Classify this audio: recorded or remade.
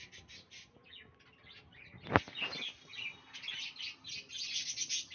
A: recorded